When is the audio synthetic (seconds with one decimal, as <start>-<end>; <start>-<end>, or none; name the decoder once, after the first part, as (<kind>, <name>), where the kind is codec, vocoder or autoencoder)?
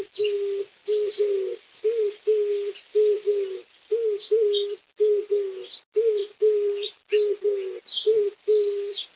none